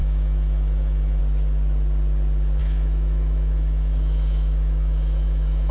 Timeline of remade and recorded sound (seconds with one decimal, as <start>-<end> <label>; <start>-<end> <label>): 0.0-1.2 remade; 1.2-2.6 recorded; 2.6-5.7 remade